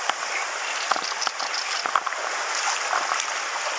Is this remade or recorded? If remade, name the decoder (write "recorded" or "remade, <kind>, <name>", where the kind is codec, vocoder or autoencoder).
recorded